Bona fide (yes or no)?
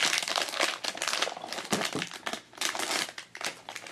yes